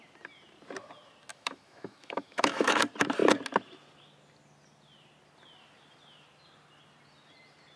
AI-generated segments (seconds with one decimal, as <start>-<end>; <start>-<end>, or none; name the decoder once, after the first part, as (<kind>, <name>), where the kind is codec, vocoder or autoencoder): 1.3-2.8 (autoencoder, DAC-VAE)